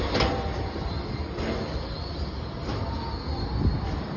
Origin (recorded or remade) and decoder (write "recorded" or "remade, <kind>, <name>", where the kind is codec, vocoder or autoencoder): recorded